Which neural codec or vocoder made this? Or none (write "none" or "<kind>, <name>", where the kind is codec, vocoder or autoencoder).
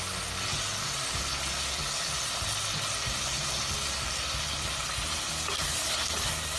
none